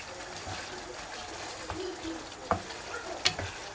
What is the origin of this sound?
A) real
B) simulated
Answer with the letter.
A